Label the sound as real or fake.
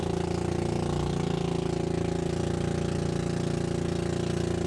real